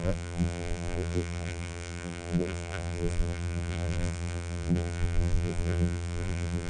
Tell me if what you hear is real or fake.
fake